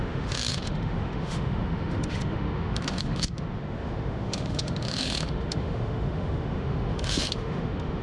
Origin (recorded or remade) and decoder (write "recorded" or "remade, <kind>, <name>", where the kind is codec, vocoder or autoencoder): remade, autoencoder, DAC-VAE